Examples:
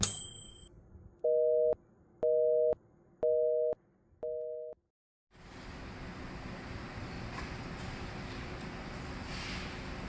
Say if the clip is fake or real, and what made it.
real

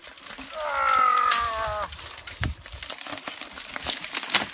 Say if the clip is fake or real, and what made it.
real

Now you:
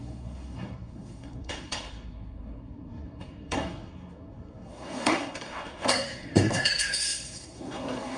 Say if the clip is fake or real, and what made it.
fake, codec, SNAC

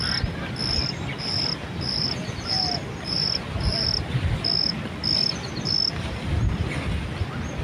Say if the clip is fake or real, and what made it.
real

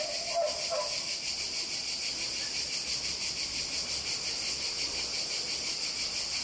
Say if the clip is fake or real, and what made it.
real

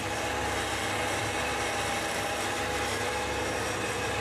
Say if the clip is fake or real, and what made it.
real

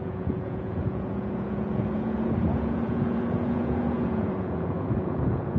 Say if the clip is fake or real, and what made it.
fake, vocoder, Vocos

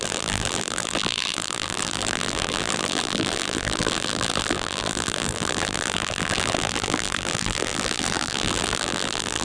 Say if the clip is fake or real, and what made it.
fake, vocoder, BigVGAN v2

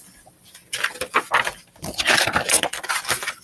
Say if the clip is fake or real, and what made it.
real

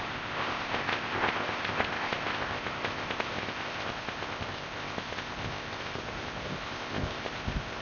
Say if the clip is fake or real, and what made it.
fake, codec, ZipCodec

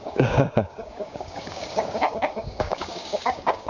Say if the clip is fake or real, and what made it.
fake, codec, DAC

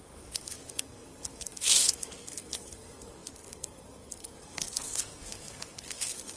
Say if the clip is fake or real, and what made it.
fake, codec, SNAC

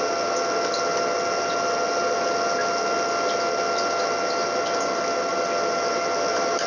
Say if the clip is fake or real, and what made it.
real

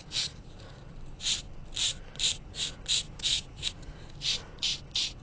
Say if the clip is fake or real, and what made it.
real